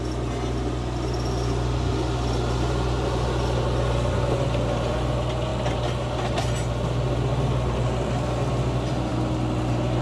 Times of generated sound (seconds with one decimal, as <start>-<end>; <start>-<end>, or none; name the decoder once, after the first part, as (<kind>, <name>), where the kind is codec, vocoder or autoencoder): none